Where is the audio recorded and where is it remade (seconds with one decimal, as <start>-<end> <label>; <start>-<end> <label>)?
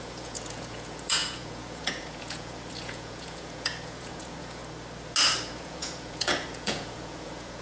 0.0-4.6 remade; 4.6-5.5 recorded; 5.5-7.6 remade